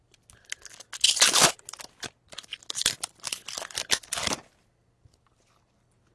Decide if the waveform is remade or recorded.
recorded